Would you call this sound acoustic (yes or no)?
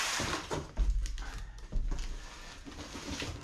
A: yes